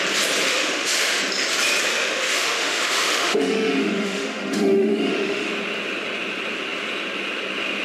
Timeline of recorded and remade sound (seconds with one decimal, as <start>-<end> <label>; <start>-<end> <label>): 0.0-0.5 recorded; 0.5-1.2 remade; 1.2-1.9 recorded; 1.9-5.5 remade; 5.5-7.8 recorded